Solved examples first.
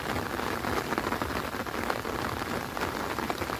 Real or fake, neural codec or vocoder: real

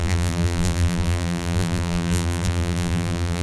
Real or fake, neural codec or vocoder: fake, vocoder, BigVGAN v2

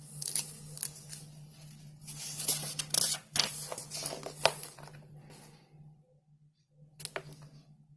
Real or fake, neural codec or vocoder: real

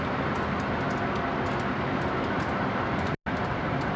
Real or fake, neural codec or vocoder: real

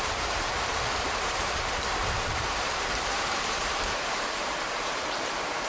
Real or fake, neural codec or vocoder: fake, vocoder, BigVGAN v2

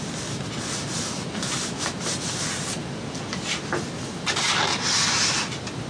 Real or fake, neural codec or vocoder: real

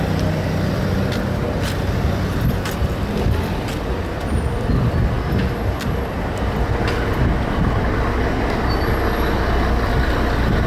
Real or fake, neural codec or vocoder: real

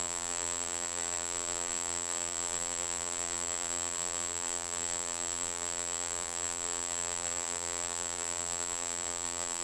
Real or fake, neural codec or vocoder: fake, vocoder, BigVGAN v2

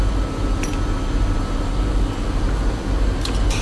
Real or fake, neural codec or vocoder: real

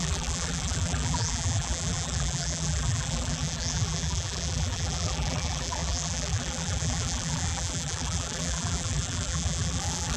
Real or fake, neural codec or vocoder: fake, vocoder, BigVGAN v2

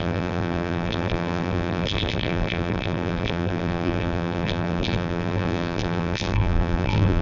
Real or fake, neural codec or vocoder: fake, vocoder, BigVGAN v2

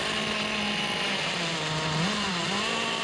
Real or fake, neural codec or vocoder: real